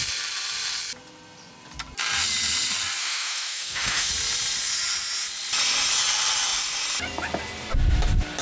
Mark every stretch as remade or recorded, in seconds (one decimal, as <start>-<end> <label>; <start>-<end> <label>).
0.0-3.0 recorded; 3.0-4.1 remade; 4.1-8.4 recorded